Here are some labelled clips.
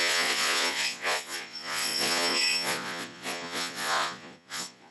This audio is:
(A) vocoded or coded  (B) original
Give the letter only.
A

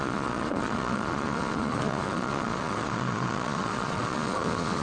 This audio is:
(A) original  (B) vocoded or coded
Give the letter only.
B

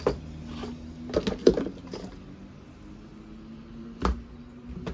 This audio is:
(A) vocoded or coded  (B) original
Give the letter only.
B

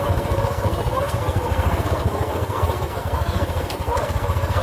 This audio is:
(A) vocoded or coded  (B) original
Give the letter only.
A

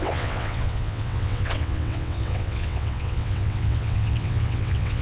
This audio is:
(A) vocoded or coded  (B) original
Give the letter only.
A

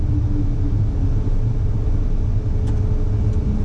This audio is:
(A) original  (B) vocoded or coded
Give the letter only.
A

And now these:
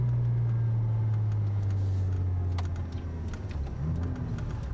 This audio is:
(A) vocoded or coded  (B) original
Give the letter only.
B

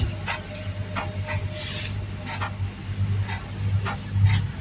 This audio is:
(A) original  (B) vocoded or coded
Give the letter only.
A